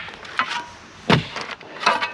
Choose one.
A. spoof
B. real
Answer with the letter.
B